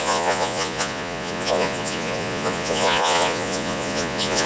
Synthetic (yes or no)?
yes